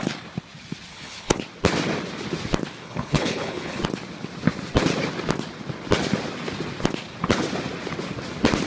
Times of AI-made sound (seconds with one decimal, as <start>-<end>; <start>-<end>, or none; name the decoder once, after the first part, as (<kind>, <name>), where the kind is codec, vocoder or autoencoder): 0.9-1.4 (codec, HILCodec); 2.8-3.8